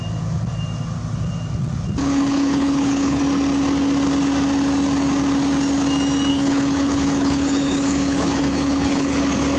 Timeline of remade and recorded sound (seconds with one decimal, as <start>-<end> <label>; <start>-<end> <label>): 0.0-2.0 recorded; 2.0-3.2 remade; 3.2-6.3 recorded; 6.3-9.2 remade; 9.2-9.6 recorded